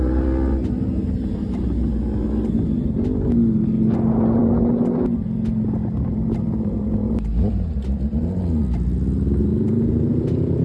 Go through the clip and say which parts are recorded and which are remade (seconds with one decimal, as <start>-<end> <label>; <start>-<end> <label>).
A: 0.0-9.5 recorded; 9.5-10.6 remade